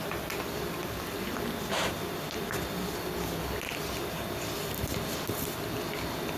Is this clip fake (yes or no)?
no